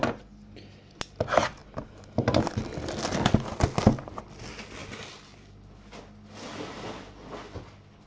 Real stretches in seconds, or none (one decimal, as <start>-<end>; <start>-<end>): 0.0-8.1